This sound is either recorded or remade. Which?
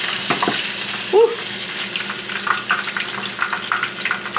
recorded